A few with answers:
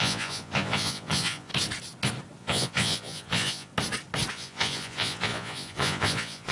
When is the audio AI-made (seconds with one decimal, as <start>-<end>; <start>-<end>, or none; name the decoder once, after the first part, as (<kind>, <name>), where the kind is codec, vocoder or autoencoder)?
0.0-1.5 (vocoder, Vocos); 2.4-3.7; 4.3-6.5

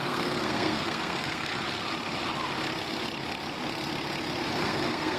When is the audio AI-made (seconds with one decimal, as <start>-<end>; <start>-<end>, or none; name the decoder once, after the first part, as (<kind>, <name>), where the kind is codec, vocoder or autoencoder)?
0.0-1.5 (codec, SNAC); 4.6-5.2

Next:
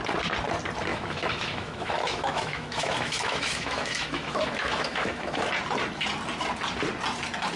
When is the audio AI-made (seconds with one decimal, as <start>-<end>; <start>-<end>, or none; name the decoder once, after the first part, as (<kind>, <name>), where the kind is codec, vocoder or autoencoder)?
0.9-5.5 (autoencoder, DAC-VAE)